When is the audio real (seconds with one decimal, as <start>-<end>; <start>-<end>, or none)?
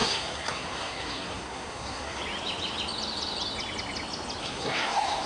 2.2-4.4